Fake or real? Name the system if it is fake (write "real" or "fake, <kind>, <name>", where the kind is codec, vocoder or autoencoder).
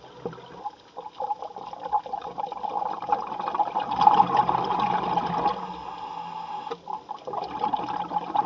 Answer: real